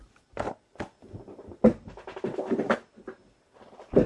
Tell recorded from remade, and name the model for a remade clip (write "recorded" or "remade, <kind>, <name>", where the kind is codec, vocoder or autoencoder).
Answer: recorded